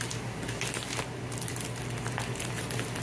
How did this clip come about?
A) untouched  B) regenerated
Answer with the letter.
A